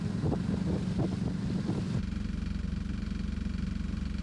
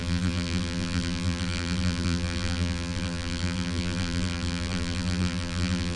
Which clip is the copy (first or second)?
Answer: second